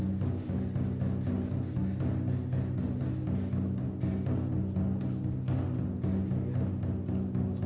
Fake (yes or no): no